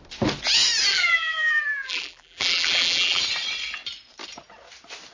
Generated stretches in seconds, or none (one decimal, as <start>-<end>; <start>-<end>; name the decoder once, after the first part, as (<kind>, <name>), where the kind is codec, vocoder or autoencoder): 0.9-3.2 (vocoder, BigVGAN v2)